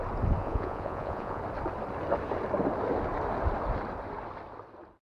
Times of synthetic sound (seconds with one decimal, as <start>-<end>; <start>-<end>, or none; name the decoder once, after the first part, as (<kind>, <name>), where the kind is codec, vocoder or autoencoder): 0.4-1.4 (vocoder, Vocos)